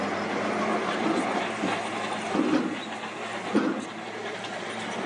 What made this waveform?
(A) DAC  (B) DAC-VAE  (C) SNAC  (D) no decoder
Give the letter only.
D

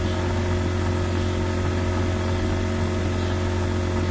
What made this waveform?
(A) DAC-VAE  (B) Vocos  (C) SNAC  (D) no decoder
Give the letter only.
D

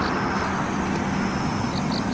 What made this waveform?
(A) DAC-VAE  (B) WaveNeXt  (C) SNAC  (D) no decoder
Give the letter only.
D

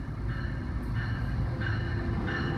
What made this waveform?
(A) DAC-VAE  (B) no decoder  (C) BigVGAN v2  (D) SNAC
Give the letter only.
B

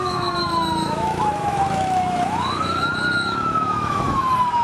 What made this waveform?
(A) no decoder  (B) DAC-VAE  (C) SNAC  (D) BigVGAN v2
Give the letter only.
B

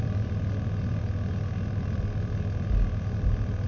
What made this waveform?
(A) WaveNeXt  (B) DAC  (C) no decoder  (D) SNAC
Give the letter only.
C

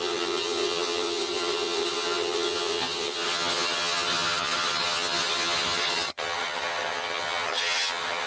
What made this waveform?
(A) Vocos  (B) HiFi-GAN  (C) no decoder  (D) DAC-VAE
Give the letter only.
B